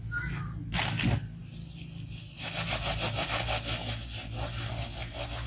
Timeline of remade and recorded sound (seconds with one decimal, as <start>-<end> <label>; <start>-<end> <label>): 0.0-5.5 recorded